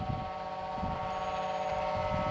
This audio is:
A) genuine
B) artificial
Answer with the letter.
A